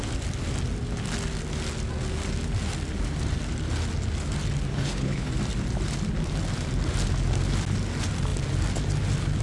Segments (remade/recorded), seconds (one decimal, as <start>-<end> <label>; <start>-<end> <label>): 0.0-4.7 recorded; 4.7-5.3 remade; 5.3-9.4 recorded